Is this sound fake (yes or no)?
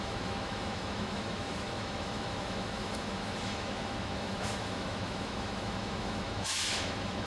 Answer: yes